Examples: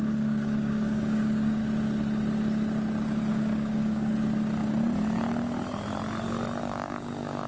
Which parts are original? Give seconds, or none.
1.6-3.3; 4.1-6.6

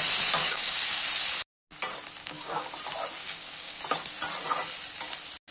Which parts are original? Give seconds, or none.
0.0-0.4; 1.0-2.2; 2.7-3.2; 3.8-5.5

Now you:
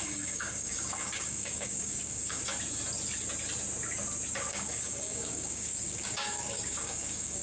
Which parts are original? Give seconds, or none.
2.4-4.5

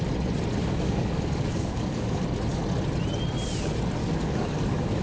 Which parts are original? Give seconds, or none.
0.0-0.6; 2.2-4.0